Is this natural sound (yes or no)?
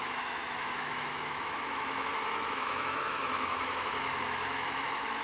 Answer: no